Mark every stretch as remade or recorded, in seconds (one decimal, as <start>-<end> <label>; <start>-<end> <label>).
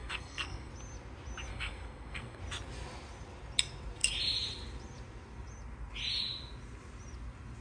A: 0.0-0.7 remade; 0.7-1.5 recorded; 1.5-2.4 remade; 2.4-7.6 recorded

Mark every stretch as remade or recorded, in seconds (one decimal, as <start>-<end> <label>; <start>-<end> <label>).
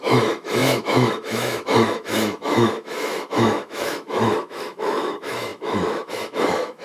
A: 0.0-6.8 remade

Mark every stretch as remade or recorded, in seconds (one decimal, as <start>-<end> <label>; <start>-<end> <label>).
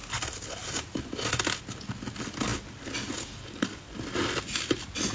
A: 0.0-5.1 recorded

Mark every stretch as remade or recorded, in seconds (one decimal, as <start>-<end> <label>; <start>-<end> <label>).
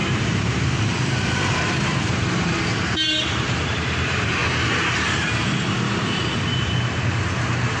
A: 0.0-7.8 remade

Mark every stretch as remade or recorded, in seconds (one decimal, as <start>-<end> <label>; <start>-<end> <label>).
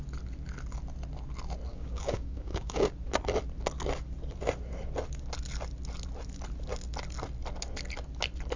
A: 0.0-1.7 recorded; 1.7-2.9 remade; 2.9-8.6 recorded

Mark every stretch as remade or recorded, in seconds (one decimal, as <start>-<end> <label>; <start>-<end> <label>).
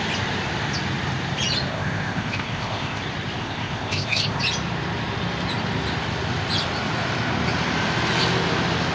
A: 0.0-1.7 recorded; 1.7-3.0 remade; 3.0-3.4 recorded; 3.4-4.4 remade; 4.4-8.9 recorded